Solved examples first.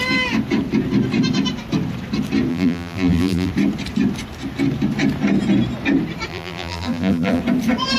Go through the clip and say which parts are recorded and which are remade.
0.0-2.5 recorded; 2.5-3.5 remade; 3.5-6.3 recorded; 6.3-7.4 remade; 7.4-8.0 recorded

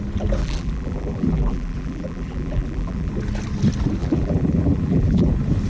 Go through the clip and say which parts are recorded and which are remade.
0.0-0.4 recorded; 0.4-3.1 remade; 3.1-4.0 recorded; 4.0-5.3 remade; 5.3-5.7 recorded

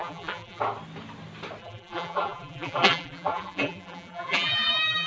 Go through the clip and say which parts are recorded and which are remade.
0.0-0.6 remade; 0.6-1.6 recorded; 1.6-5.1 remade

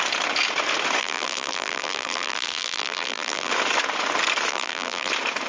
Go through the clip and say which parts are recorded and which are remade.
0.0-1.0 recorded; 1.0-3.5 remade; 3.5-4.5 recorded; 4.5-5.1 remade; 5.1-5.5 recorded

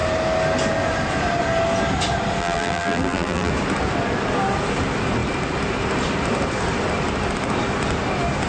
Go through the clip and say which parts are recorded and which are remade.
0.0-2.4 recorded; 2.4-3.5 remade; 3.5-8.5 recorded

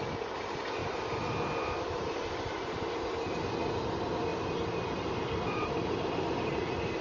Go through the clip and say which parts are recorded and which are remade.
0.0-4.3 recorded; 4.3-6.2 remade; 6.2-7.0 recorded

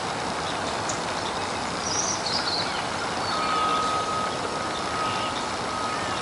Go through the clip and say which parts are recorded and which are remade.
0.0-6.2 recorded

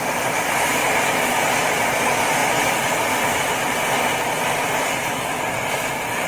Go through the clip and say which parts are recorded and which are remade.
0.0-2.4 recorded; 2.4-3.0 remade; 3.0-6.3 recorded